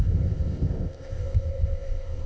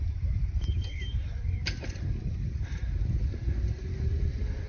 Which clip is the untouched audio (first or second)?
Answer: second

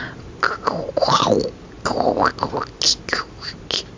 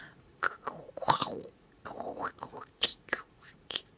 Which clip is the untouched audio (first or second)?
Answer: first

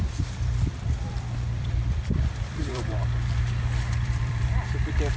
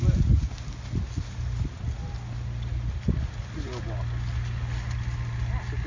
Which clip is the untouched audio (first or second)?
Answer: second